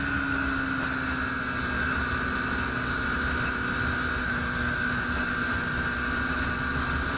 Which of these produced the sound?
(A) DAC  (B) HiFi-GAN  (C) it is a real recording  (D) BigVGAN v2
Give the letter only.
C